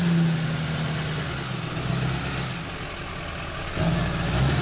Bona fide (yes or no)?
yes